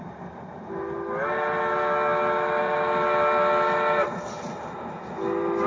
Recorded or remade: recorded